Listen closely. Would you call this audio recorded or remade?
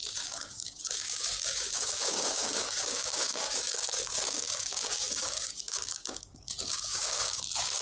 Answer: remade